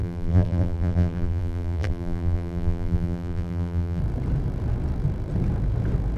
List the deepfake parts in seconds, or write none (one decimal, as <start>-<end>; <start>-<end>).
0.0-4.0